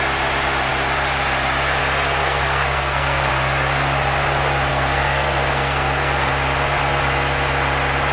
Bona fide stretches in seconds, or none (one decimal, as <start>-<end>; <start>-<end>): 0.0-2.2; 3.3-4.7; 6.3-8.1